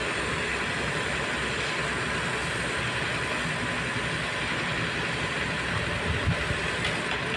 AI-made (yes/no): no